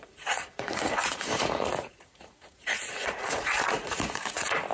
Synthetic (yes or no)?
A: yes